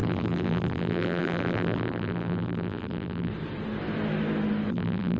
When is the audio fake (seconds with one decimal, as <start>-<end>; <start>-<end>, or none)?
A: 0.0-3.3; 4.7-5.2